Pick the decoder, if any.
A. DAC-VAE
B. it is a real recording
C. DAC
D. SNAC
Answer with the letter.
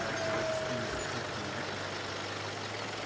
B